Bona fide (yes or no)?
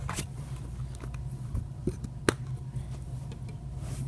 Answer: yes